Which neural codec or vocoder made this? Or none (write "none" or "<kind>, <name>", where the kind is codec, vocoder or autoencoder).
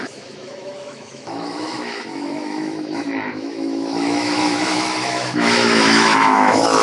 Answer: autoencoder, DAC-VAE